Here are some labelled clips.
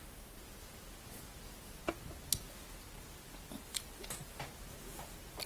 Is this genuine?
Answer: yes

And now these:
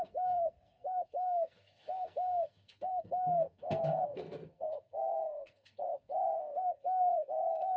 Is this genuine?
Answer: no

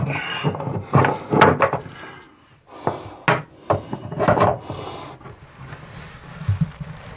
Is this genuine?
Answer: yes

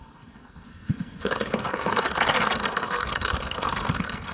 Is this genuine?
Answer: no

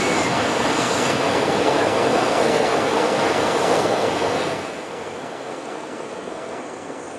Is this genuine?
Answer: no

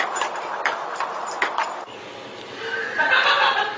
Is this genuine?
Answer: yes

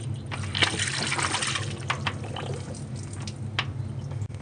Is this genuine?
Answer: yes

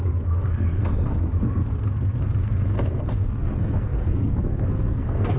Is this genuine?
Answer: no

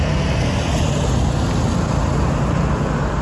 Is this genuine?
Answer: yes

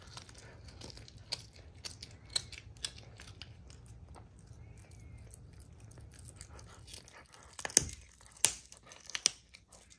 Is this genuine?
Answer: yes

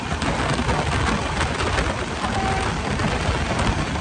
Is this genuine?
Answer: yes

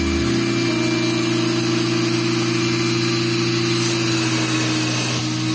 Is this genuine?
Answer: yes